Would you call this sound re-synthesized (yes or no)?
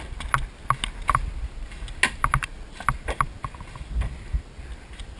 no